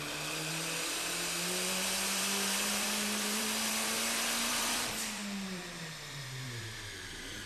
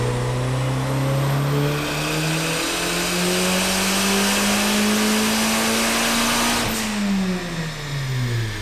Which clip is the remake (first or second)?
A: first